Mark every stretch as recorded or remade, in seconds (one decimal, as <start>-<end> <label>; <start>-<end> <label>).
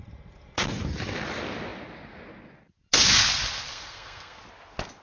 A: 0.0-3.7 recorded; 3.7-4.4 remade; 4.4-5.0 recorded